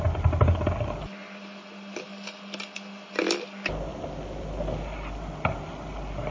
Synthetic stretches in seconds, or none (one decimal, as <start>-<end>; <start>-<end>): none

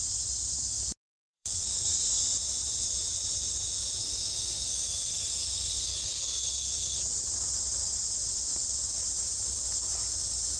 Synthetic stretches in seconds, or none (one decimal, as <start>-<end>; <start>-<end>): 1.1-2.2; 4.0-7.0

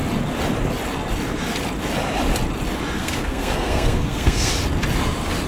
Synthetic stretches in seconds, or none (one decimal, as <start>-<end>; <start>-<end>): 3.0-4.5

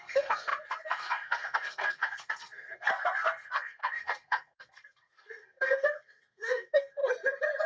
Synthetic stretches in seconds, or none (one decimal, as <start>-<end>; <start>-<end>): 0.0-7.0

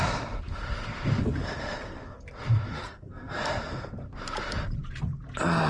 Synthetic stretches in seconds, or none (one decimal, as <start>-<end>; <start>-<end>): 2.7-3.4